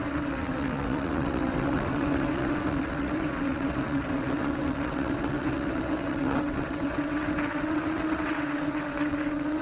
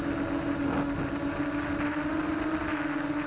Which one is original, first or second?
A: second